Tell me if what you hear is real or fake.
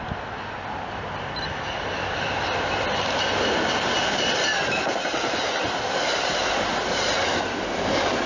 real